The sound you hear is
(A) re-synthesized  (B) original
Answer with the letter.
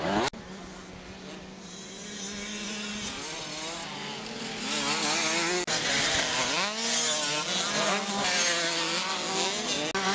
B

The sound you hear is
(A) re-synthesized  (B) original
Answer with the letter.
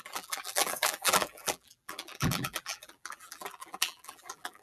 A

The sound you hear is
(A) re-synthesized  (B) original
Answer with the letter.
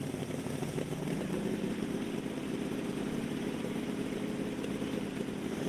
A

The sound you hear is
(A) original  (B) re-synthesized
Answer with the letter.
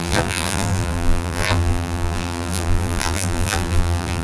B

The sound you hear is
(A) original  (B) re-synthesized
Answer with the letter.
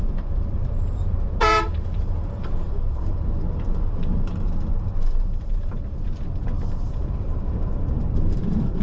B